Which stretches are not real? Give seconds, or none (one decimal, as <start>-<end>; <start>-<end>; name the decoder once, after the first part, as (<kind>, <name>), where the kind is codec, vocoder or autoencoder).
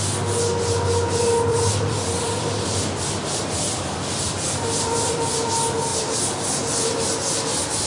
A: 1.5-5.5 (vocoder, BigVGAN v2); 5.9-7.0